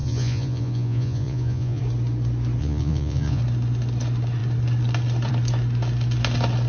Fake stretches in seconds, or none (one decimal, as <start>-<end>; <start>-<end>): 0.0-1.8; 2.6-3.4